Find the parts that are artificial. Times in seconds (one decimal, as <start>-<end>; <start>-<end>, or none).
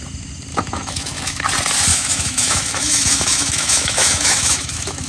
0.5-1.4; 1.9-5.1